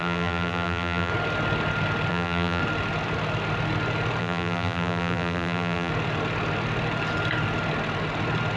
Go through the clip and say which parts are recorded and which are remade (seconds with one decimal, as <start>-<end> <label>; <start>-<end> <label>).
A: 0.0-1.1 remade; 1.1-2.1 recorded; 2.1-2.6 remade; 2.6-4.2 recorded; 4.2-5.9 remade; 5.9-8.6 recorded